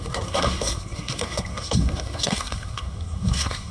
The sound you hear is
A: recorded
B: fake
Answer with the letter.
B